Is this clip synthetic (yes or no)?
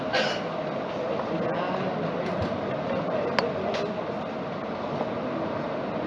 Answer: no